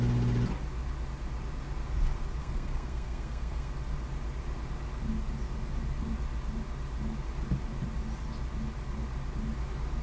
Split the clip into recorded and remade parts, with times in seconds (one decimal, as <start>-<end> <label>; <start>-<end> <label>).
0.0-2.4 recorded; 2.4-3.7 remade; 3.7-10.0 recorded